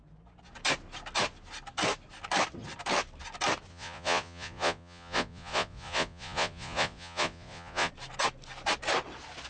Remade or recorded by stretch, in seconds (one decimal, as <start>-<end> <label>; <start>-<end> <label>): 0.0-3.7 recorded; 3.7-7.9 remade; 7.9-9.5 recorded